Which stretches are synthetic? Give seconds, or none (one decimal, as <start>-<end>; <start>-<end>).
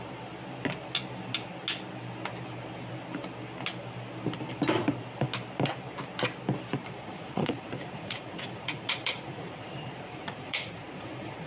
6.8-11.5